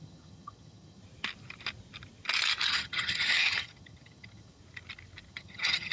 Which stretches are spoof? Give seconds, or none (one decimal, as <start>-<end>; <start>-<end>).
0.0-1.0; 2.7-4.6; 5.3-5.9